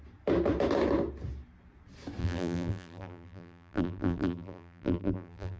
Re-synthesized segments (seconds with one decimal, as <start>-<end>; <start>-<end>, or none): 2.2-5.6

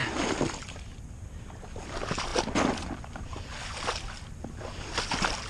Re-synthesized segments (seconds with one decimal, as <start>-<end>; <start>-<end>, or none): none

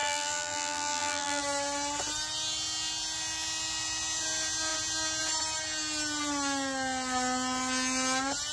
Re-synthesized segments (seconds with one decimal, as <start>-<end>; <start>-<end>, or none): 0.0-1.4

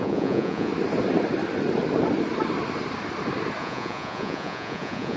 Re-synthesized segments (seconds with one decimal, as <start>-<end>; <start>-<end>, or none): 0.0-0.7; 3.6-5.2

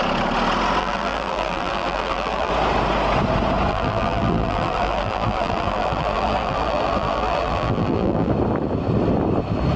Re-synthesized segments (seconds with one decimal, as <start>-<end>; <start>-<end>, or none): 0.8-2.5; 3.7-8.3